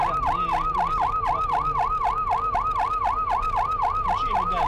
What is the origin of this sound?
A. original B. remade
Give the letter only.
A